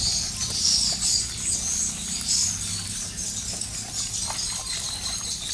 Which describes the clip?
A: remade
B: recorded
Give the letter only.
B